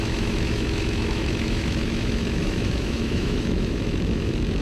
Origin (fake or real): fake